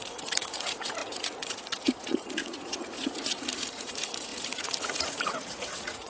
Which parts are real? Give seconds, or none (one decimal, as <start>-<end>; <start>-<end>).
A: none